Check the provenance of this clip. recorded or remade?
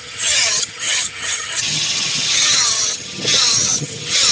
remade